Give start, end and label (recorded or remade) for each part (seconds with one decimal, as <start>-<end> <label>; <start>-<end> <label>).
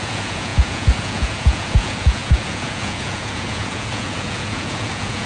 0.0-5.3 remade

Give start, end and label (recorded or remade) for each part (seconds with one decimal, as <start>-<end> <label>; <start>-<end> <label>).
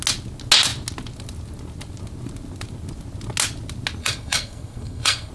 0.0-4.0 recorded; 4.0-5.3 remade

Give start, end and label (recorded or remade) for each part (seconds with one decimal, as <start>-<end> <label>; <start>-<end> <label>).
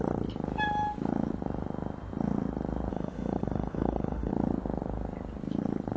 0.0-2.9 recorded; 2.9-4.3 remade; 4.3-6.0 recorded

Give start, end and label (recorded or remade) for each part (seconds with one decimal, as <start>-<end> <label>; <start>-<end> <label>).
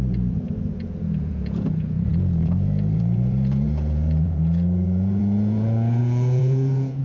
0.0-7.0 remade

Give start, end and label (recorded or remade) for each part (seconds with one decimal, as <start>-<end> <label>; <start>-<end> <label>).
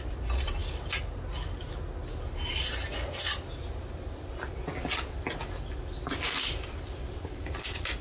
0.0-8.0 recorded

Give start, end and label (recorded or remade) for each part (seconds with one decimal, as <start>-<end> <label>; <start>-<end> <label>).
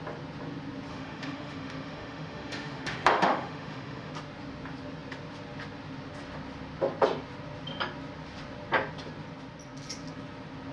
0.0-0.9 recorded; 0.9-4.1 remade; 4.1-10.7 recorded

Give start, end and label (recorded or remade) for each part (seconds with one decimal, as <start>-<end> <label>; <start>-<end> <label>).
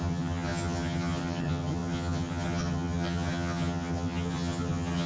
0.0-5.1 remade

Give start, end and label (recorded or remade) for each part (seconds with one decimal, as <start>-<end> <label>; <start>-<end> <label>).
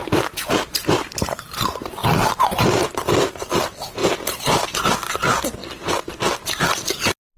0.0-2.9 remade; 2.9-4.0 recorded; 4.0-4.9 remade; 4.9-7.4 recorded